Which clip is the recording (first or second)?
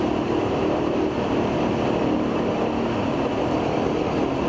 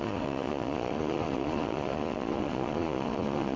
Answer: first